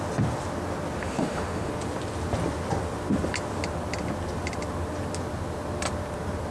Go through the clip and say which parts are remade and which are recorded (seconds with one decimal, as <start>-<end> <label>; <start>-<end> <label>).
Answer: 0.0-1.0 recorded; 1.0-1.7 remade; 1.7-6.5 recorded